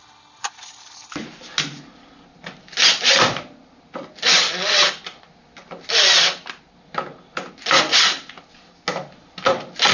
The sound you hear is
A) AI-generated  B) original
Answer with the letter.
B